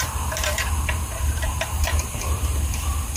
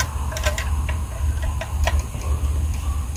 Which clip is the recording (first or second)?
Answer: second